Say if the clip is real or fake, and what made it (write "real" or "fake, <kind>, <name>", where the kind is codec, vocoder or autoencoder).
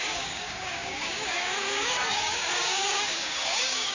fake, codec, DAC